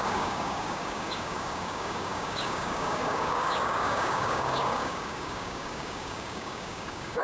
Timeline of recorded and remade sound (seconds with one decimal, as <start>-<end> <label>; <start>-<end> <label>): 0.0-7.2 remade